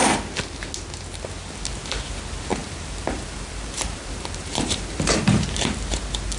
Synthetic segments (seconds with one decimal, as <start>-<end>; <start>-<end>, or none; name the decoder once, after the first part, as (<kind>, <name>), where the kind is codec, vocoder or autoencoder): 2.6-4.8 (vocoder, BigVGAN v2)